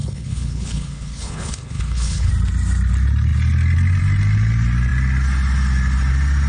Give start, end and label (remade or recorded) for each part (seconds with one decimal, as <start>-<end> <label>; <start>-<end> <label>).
0.0-2.3 remade; 2.3-6.5 recorded